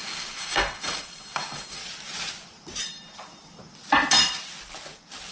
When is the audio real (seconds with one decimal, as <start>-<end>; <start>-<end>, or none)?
1.8-5.3